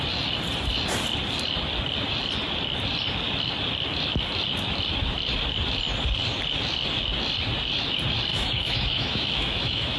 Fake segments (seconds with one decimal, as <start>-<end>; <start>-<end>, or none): 8.3-10.0